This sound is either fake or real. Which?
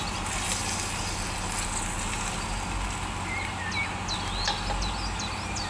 real